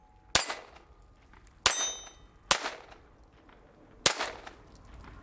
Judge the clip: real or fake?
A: real